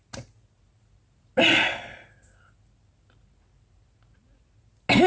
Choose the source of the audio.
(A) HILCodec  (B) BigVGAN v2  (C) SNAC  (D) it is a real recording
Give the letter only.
D